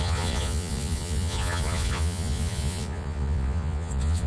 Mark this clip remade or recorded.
remade